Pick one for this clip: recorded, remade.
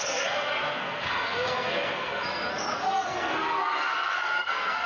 remade